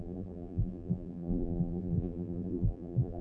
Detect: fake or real fake